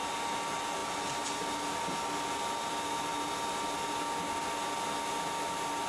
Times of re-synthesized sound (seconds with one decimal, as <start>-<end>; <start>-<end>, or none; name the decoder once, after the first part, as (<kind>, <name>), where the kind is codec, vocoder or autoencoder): none